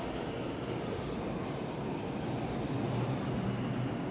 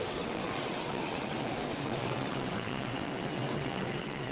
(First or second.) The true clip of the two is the first